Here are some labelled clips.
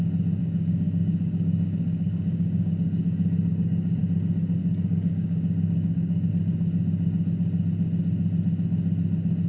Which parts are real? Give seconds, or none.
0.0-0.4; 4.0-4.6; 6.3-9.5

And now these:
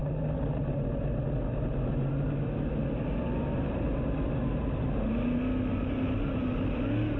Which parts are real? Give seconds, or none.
0.0-5.7; 6.8-7.2

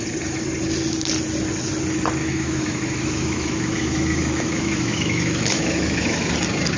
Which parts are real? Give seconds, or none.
0.0-2.2; 6.3-6.8

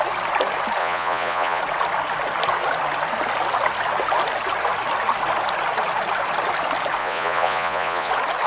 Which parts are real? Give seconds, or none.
0.0-0.8; 1.6-7.0; 8.1-8.5

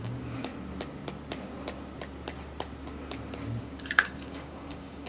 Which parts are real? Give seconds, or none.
0.5-3.6

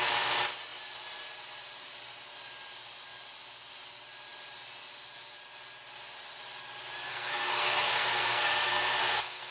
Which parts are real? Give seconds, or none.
0.0-7.1

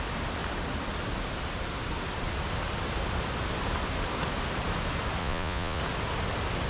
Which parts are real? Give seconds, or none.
0.0-5.2; 5.8-6.7

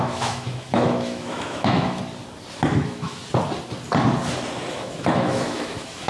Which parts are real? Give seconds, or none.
2.0-2.7; 3.2-4.7